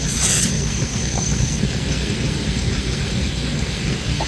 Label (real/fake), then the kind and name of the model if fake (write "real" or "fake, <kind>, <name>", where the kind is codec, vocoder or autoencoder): fake, codec, SNAC